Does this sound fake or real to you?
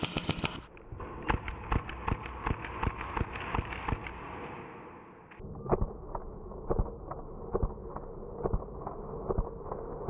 real